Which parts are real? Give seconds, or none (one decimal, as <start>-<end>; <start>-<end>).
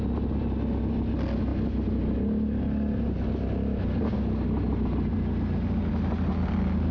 0.0-6.9